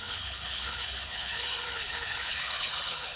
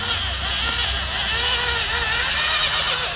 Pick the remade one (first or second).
first